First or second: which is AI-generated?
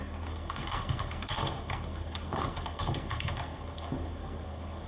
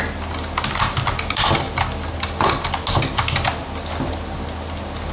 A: first